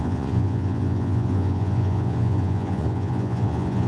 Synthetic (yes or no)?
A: yes